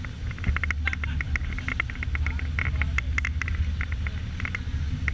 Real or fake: real